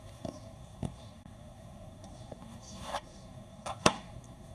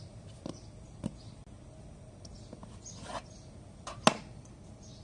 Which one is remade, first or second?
first